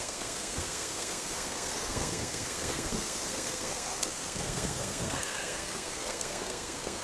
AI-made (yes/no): yes